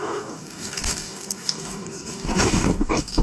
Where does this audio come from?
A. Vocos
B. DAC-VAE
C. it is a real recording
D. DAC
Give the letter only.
D